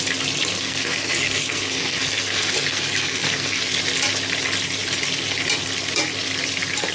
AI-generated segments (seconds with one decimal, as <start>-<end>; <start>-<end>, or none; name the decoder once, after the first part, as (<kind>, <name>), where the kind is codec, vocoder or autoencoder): 0.5-3.7 (codec, SNAC)